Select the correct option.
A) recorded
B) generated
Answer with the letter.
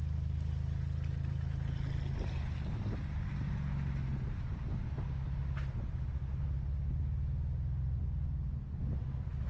A